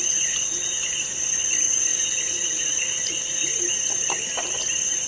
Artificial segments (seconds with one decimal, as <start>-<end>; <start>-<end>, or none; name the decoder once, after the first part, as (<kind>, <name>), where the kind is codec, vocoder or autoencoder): none